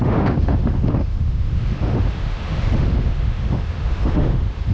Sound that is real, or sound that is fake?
fake